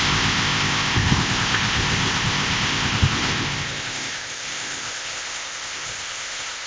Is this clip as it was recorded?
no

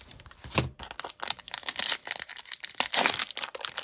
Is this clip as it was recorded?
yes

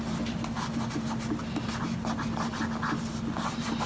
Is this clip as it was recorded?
yes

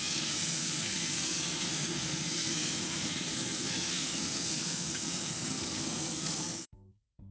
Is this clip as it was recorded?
no